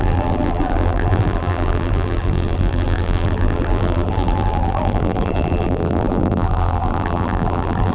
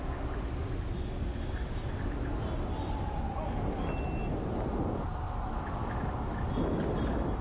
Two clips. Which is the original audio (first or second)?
second